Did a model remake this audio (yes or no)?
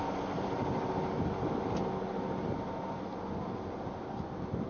no